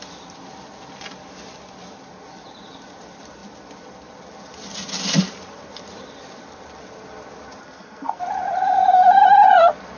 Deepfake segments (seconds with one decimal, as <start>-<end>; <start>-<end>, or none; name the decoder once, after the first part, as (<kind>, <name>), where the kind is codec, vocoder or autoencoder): 7.6-8.2 (codec, SNAC)